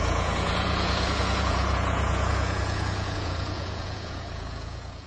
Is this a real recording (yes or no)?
no